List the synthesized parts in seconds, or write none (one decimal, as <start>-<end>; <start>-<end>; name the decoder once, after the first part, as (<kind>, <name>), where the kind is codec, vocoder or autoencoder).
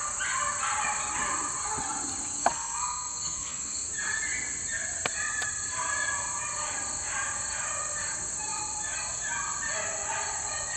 2.4-3.9 (codec, SNAC)